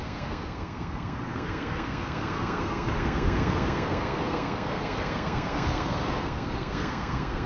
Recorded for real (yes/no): no